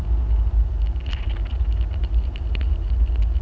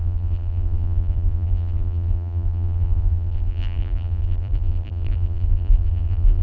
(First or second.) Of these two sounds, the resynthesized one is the second